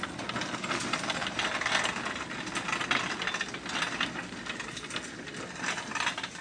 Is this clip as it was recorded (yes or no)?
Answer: yes